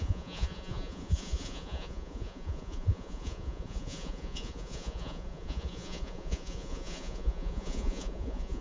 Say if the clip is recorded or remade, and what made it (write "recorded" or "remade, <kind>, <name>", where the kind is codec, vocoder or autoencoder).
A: remade, vocoder, Vocos